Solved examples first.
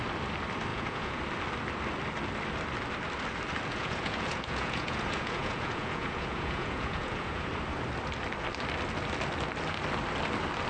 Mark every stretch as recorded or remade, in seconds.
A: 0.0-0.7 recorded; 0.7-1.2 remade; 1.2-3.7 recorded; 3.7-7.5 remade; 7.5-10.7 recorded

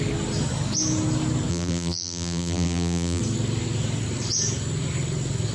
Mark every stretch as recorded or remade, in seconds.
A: 0.0-1.5 recorded; 1.5-3.2 remade; 3.2-5.5 recorded

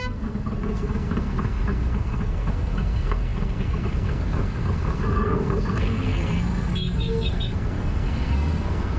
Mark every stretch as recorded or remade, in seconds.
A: 0.0-9.0 remade

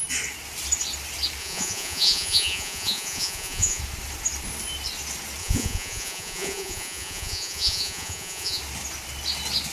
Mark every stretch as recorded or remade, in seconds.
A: 0.0-1.4 recorded; 1.4-3.8 remade; 3.8-5.4 recorded; 5.4-8.6 remade; 8.6-9.7 recorded

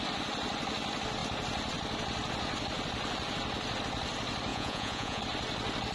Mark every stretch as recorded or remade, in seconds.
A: 0.0-4.5 recorded; 4.5-5.2 remade; 5.2-5.9 recorded

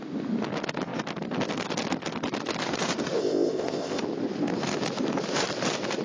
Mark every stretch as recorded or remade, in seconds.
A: 0.0-3.2 recorded; 3.2-4.0 remade; 4.0-6.0 recorded